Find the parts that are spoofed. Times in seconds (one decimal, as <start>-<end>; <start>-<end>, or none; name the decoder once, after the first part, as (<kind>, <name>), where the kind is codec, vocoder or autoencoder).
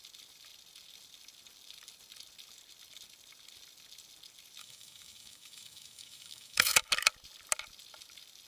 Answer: 4.6-6.9 (autoencoder, DAC-VAE)